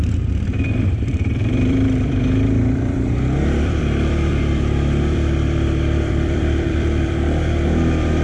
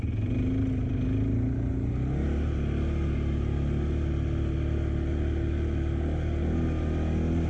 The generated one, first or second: first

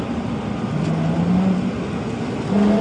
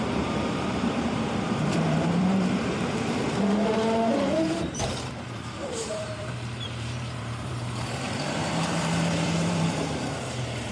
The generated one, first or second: second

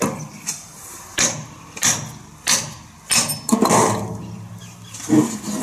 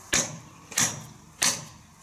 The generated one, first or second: second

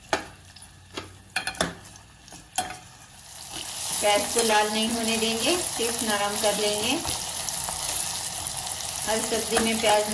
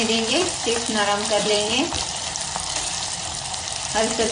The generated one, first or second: second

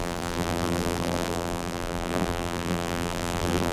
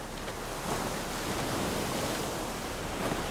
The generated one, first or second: first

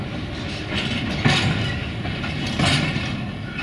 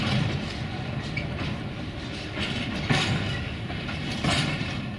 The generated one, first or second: second